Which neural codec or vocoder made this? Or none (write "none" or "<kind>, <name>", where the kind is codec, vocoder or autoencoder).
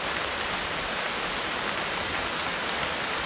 none